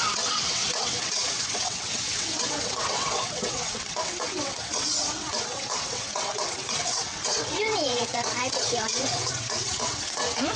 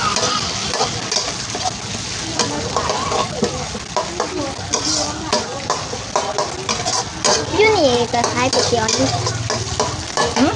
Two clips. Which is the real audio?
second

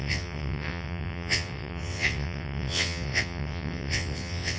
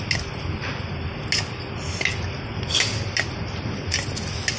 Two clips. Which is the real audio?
second